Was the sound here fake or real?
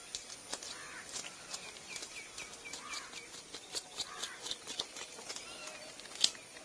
real